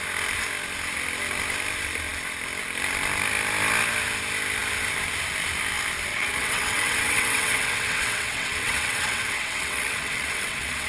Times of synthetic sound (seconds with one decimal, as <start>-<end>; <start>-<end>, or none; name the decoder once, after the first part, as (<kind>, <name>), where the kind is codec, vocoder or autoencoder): 6.1-10.9 (vocoder, WaveNeXt)